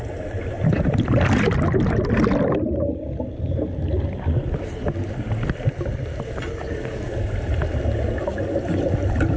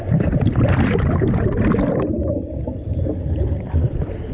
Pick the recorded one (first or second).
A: first